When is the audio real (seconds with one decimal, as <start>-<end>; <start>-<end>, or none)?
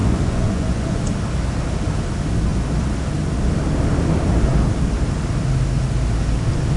1.0-6.8